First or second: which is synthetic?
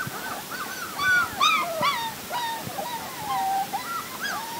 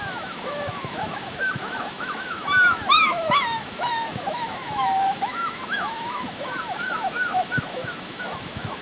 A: second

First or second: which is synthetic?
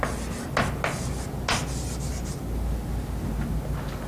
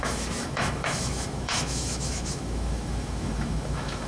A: second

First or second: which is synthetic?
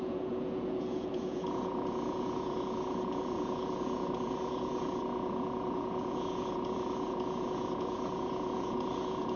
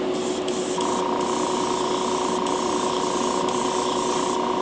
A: first